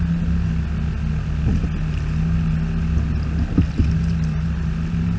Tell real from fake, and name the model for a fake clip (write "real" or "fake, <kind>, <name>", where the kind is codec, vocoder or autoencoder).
real